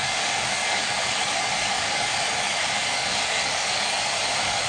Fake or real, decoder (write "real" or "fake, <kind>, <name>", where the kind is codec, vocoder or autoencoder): fake, codec, DAC